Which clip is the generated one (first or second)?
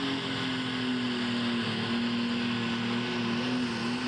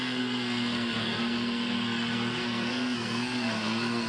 second